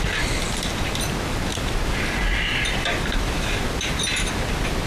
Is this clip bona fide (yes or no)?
yes